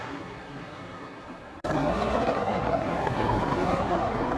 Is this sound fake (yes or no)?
yes